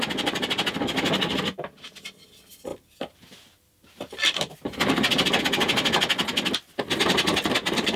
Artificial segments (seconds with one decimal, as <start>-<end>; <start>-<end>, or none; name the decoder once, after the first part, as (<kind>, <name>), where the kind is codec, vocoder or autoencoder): 2.7-5.4 (vocoder, BigVGAN v2); 7.3-8.0